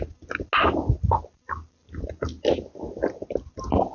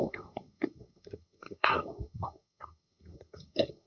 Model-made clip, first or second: second